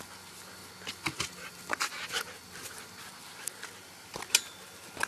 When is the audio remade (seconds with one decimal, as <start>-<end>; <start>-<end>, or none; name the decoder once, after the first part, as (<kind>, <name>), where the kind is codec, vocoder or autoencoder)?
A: none